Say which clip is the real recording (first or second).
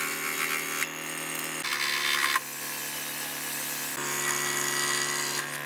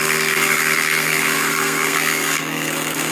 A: first